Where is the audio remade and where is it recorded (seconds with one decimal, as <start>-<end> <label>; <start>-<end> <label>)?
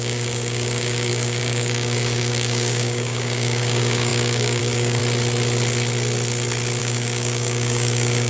0.0-5.0 remade; 5.0-6.8 recorded; 6.8-8.3 remade